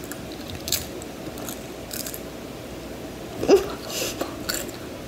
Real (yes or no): yes